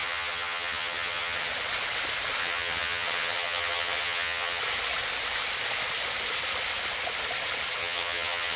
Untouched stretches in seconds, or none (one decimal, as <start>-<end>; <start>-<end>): 1.5-2.4; 4.6-7.8